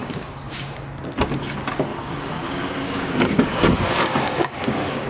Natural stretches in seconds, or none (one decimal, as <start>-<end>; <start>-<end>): 0.7-1.9